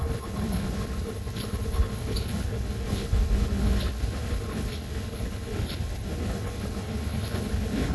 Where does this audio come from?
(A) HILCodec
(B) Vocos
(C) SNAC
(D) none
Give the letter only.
A